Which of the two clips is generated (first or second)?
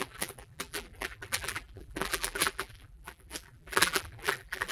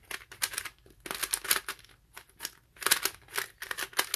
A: first